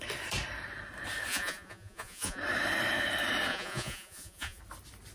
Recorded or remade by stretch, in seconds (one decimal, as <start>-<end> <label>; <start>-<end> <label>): 0.0-1.3 recorded; 1.3-2.4 remade; 2.4-3.5 recorded; 3.5-4.6 remade; 4.6-5.1 recorded